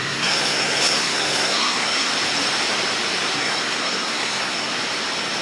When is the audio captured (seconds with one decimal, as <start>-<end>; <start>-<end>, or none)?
2.1-3.4; 4.7-5.4